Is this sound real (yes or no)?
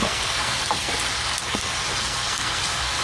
no